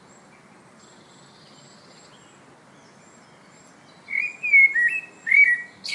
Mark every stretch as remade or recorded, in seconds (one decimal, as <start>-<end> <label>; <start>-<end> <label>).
0.0-5.9 recorded